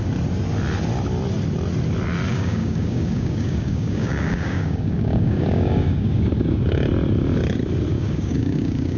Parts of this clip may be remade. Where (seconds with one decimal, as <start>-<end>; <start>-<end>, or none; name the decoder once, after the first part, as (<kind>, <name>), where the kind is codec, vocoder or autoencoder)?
2.3-6.6 (codec, DAC); 7.9-9.0